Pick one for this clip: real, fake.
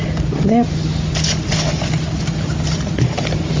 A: real